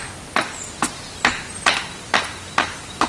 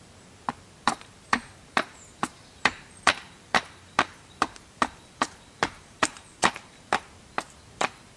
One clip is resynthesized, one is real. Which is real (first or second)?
first